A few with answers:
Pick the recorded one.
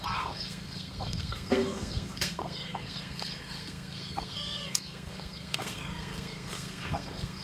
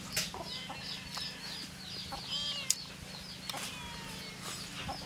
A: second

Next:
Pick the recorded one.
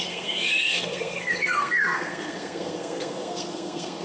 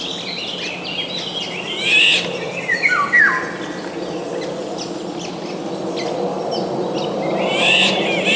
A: second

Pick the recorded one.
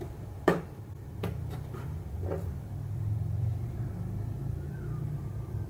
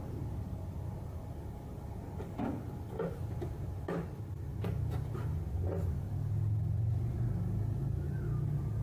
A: second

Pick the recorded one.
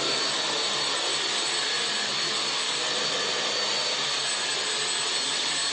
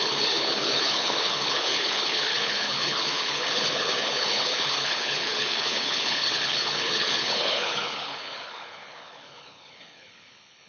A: first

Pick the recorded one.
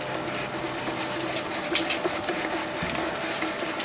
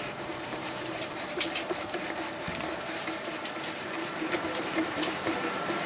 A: first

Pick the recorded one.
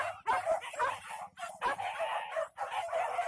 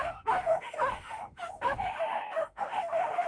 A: first